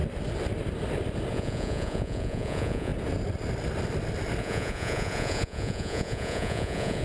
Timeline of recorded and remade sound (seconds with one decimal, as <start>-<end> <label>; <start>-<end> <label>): 0.0-1.3 recorded; 1.3-2.9 remade; 2.9-4.4 recorded; 4.4-7.0 remade